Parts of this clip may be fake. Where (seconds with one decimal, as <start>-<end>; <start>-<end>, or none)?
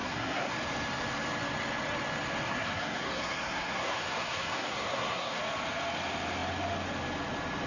0.0-0.5; 2.5-5.4